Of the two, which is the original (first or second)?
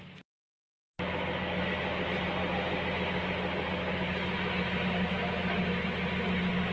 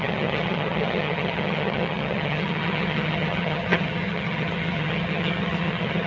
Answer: first